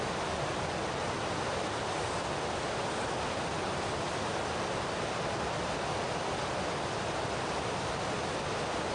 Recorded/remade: recorded